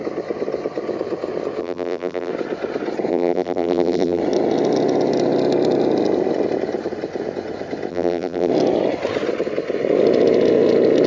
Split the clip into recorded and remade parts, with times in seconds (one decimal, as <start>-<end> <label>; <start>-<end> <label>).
0.0-1.6 recorded; 1.6-2.3 remade; 2.3-3.1 recorded; 3.1-4.2 remade; 4.2-7.9 recorded; 7.9-8.5 remade; 8.5-11.1 recorded